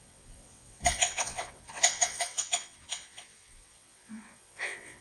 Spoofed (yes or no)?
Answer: yes